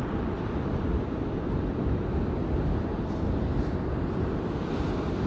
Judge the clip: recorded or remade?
recorded